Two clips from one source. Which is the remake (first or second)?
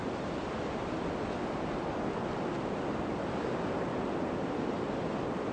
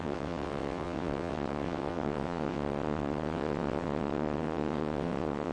second